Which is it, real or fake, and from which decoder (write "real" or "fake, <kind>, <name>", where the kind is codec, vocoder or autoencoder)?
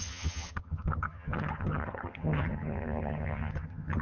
fake, vocoder, HiFi-GAN